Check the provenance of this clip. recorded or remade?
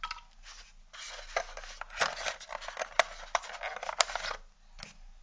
recorded